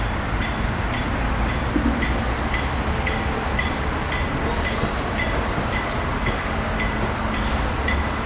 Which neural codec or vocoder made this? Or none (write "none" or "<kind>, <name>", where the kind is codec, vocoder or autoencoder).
none